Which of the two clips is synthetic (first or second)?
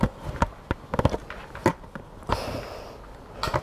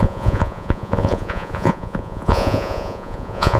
second